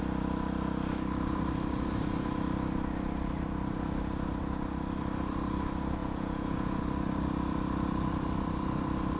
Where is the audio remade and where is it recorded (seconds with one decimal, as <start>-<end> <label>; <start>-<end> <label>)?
0.0-6.0 recorded; 6.0-6.8 remade; 6.8-9.2 recorded